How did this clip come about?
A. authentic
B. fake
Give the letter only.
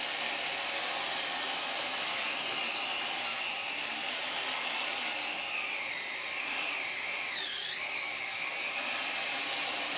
B